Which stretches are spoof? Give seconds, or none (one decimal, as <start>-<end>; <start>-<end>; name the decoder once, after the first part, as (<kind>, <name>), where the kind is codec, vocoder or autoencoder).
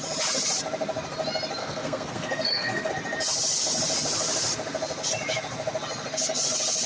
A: 1.6-2.9 (codec, SNAC)